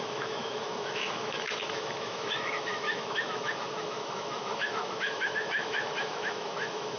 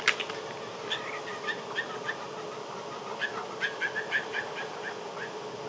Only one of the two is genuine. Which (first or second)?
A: second